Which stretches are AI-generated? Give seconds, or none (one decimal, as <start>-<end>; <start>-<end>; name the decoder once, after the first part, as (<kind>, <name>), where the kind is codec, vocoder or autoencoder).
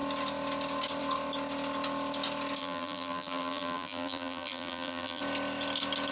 2.6-5.2 (vocoder, BigVGAN v2)